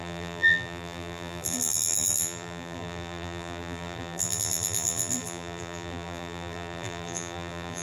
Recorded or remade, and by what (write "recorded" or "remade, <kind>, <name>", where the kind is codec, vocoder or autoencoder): remade, vocoder, BigVGAN v2